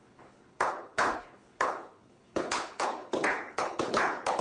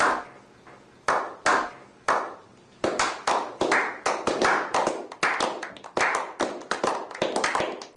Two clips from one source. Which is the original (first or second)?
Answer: second